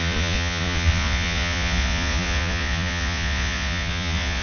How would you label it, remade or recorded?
remade